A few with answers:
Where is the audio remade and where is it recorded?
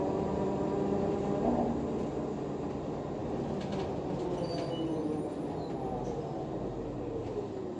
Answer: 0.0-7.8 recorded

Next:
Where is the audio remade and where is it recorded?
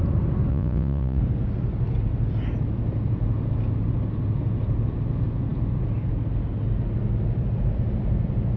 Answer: 0.0-0.5 recorded; 0.5-1.2 remade; 1.2-8.6 recorded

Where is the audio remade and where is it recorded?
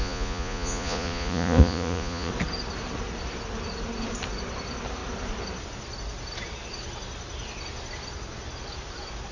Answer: 0.0-2.3 remade; 2.3-9.3 recorded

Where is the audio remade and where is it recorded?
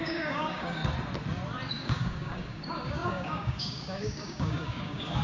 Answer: 0.0-0.8 remade; 0.8-1.7 recorded; 1.7-5.2 remade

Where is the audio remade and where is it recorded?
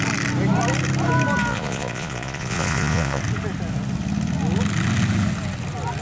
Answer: 0.0-1.5 recorded; 1.5-3.2 remade; 3.2-6.0 recorded